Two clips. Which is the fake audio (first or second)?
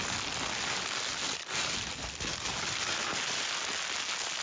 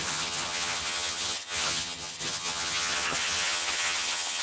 second